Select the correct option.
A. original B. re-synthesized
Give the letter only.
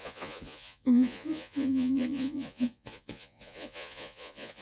B